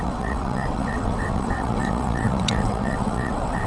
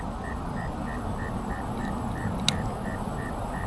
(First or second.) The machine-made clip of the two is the first